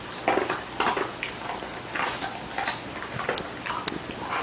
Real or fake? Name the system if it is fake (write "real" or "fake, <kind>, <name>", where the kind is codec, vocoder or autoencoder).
real